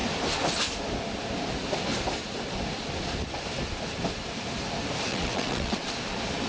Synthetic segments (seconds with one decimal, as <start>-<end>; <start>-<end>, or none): 5.1-5.9